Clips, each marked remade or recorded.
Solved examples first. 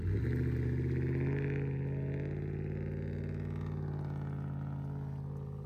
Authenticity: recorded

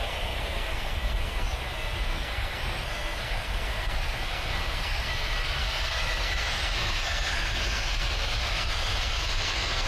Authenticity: remade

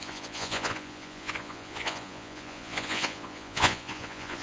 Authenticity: remade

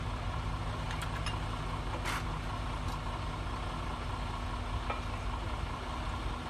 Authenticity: recorded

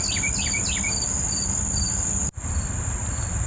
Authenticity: recorded